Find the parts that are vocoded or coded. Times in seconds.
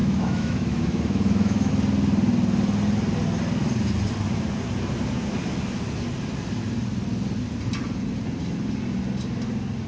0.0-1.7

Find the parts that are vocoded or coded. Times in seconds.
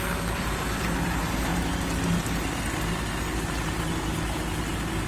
none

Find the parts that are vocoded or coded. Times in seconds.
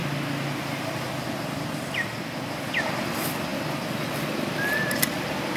none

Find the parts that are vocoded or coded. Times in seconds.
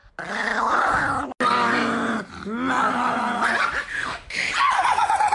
3.9-4.5